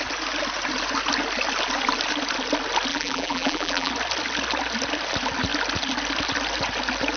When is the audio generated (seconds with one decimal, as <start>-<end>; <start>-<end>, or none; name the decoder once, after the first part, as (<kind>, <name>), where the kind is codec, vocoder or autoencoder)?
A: 2.9-3.9 (vocoder, BigVGAN v2)